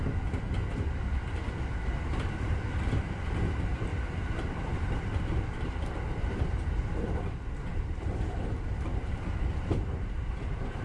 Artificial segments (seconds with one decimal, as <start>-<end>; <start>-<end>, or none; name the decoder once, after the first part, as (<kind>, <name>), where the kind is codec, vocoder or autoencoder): 3.9-5.0 (vocoder, BigVGAN v2); 7.7-8.5